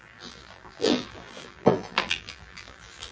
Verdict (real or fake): fake